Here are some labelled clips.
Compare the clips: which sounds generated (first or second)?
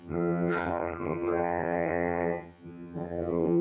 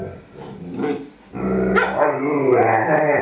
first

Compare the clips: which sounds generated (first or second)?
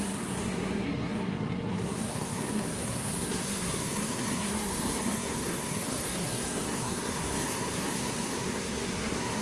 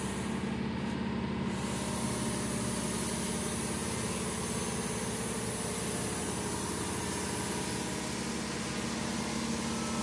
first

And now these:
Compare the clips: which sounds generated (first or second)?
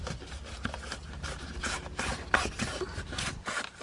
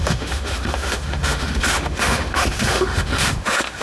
second